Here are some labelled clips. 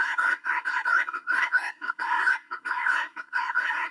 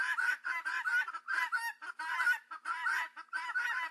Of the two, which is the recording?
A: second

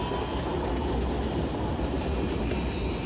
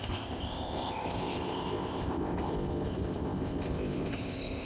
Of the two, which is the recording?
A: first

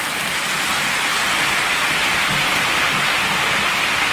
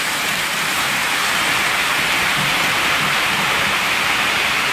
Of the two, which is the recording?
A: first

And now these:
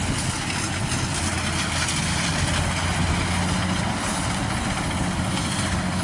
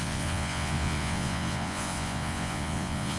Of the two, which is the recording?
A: first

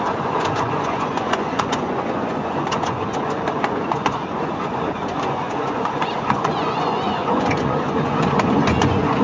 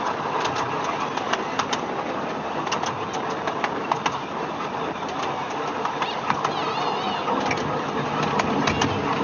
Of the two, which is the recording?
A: second